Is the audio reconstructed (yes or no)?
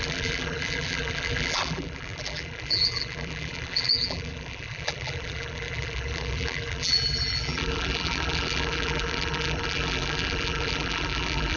yes